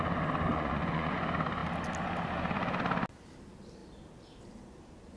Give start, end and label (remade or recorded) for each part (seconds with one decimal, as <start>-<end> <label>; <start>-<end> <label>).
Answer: 0.0-0.5 recorded; 0.5-1.2 remade; 1.2-5.2 recorded